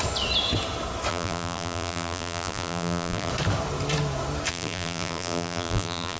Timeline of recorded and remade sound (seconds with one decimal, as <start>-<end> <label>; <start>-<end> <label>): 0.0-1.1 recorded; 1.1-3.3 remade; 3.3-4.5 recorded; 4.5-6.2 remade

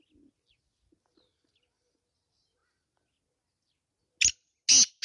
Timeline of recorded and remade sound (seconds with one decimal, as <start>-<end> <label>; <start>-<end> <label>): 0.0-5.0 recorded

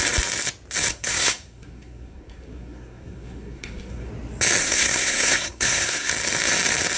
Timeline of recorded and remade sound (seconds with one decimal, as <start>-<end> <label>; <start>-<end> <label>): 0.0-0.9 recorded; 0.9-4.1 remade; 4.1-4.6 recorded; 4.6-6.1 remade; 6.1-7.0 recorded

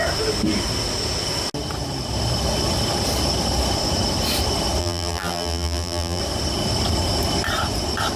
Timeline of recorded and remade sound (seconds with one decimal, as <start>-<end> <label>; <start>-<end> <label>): 0.0-4.8 recorded; 4.8-6.2 remade; 6.2-8.2 recorded

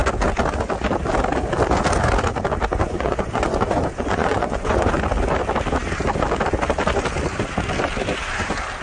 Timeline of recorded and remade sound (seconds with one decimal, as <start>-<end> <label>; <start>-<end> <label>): 0.0-2.8 recorded; 2.8-4.9 remade; 4.9-8.8 recorded

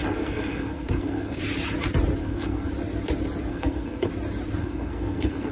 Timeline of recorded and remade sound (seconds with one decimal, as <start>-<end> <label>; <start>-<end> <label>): 0.0-1.4 remade; 1.4-2.2 recorded; 2.2-2.7 remade; 2.7-3.5 recorded; 3.5-4.1 remade; 4.1-4.6 recorded; 4.6-5.5 remade